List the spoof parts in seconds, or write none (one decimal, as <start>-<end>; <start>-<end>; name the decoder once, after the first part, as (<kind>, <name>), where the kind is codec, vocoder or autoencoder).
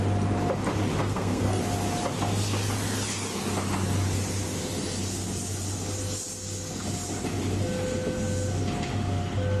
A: 1.0-1.6 (codec, SNAC)